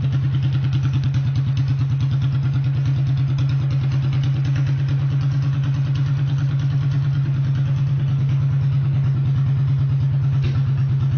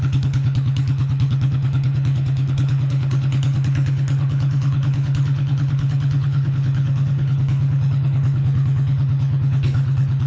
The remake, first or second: second